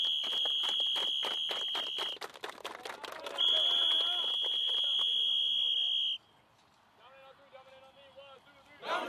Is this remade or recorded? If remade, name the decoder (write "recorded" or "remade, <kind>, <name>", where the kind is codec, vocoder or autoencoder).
recorded